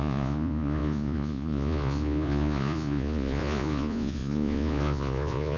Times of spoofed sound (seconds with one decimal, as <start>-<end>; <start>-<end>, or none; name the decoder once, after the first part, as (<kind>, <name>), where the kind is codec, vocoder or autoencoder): 0.0-5.6 (vocoder, Vocos)